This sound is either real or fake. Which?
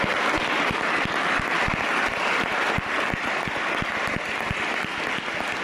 real